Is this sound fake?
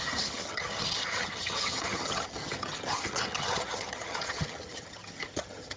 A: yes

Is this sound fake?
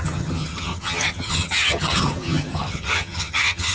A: yes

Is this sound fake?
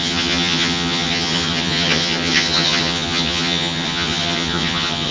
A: yes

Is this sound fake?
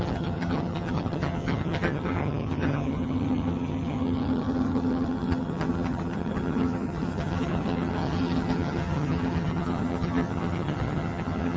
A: yes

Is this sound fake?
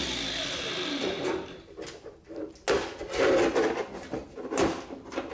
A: no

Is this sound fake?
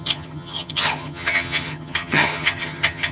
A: yes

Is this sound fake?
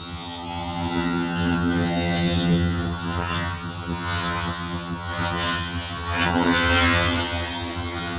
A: yes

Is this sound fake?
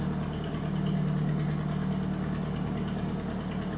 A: no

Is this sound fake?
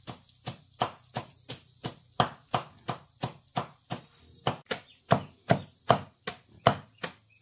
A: no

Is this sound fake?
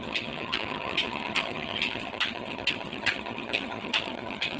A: yes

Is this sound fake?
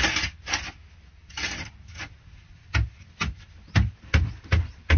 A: no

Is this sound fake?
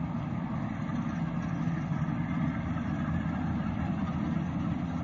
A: no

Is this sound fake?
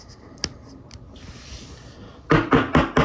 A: no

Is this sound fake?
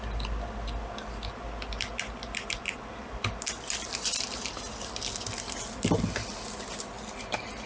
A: no